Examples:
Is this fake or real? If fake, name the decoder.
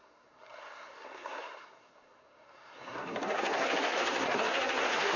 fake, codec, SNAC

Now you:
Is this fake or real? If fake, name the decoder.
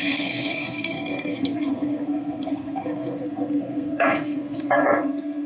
fake, codec, SNAC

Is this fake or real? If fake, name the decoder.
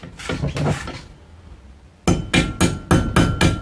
real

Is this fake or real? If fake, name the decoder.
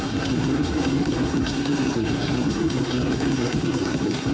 fake, codec, SNAC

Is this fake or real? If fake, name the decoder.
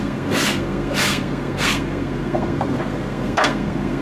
fake, codec, SNAC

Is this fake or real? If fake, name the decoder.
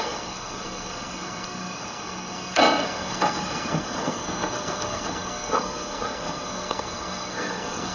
fake, codec, SNAC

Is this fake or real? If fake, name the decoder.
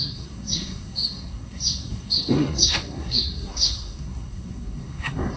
fake, codec, SNAC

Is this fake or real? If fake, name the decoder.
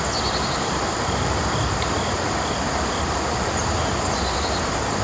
real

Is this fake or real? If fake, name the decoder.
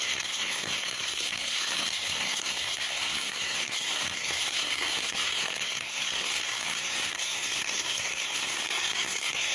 fake, codec, SNAC